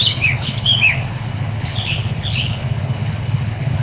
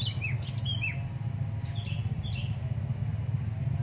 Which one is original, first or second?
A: second